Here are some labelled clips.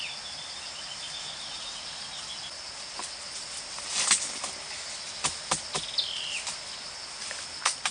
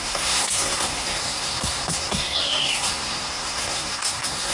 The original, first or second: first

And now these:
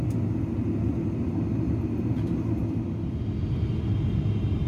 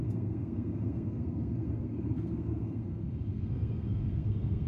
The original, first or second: first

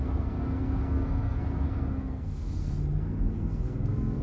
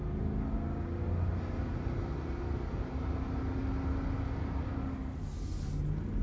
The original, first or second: second